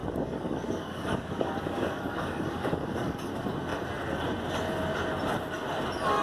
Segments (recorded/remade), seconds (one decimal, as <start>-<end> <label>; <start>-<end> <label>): 0.0-3.3 remade; 3.3-6.2 recorded